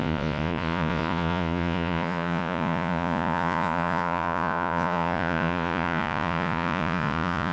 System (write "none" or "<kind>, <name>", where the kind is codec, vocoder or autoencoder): vocoder, Vocos